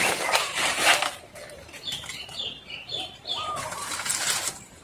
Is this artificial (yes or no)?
yes